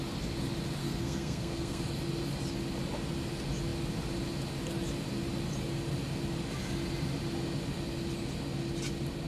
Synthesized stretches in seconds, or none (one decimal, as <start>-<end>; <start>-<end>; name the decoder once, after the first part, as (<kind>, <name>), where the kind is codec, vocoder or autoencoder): 0.8-1.8 (codec, SNAC)